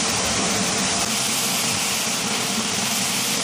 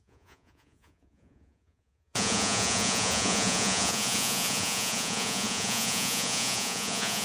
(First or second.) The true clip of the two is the first